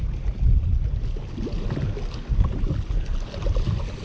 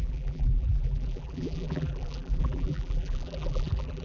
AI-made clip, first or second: second